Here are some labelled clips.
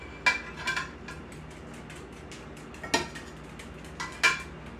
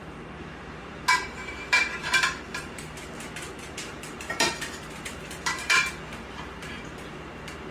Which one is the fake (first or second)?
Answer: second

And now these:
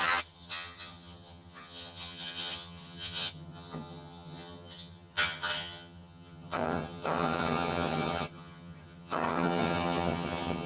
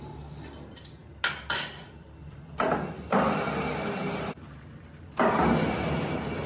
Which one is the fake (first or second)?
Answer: first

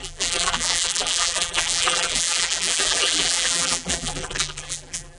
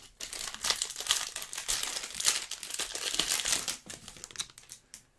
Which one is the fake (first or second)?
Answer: first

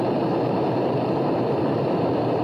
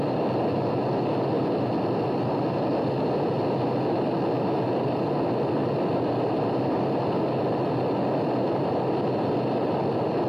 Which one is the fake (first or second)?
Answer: first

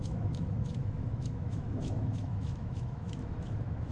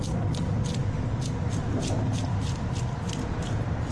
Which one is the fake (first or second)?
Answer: first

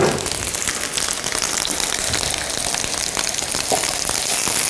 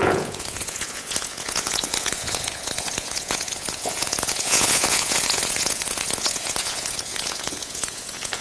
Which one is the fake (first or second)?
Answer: second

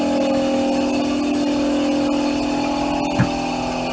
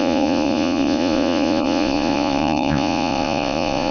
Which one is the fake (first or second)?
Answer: second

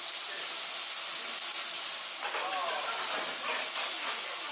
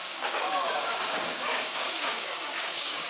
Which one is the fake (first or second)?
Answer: second